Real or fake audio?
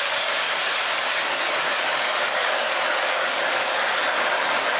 fake